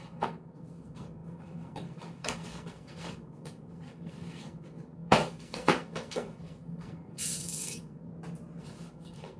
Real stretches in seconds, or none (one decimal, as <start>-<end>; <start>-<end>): 8.1-8.6